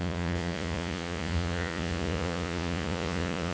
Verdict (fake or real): fake